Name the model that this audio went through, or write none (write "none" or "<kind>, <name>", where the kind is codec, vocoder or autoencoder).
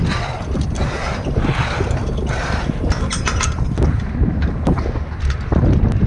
none